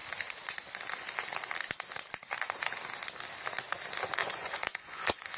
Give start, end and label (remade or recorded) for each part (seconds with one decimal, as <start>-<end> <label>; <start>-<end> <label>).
0.0-4.2 recorded; 4.2-5.4 remade

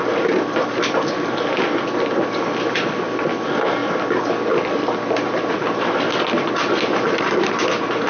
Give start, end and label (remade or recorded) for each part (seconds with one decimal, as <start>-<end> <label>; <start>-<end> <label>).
0.0-8.1 recorded

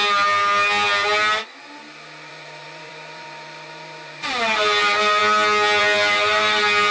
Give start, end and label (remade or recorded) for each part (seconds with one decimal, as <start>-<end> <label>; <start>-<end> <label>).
0.0-2.3 recorded; 2.3-5.2 remade; 5.2-5.8 recorded; 5.8-6.9 remade